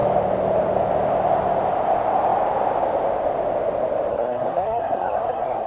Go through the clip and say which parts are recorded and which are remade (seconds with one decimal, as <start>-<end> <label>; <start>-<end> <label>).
0.0-4.1 recorded; 4.1-5.7 remade